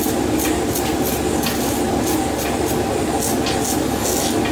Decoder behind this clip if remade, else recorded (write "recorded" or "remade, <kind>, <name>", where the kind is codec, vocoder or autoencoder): recorded